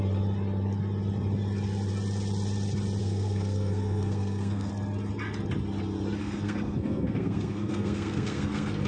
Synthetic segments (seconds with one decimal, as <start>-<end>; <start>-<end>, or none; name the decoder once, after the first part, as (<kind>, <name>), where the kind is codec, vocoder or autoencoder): 3.0-4.7 (codec, SNAC); 6.2-8.9